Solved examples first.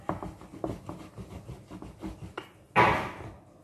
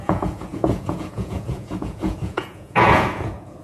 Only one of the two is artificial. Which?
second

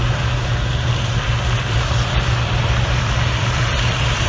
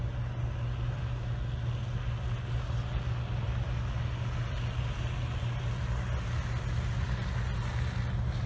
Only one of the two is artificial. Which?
first